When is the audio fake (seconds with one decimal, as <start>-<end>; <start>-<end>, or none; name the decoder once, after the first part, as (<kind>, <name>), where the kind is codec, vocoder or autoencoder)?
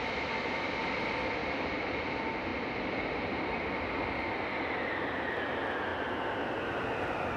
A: 1.4-2.0 (vocoder, BigVGAN v2)